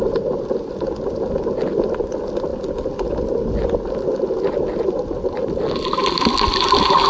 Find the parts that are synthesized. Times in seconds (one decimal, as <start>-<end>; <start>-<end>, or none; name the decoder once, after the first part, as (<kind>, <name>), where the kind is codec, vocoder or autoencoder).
none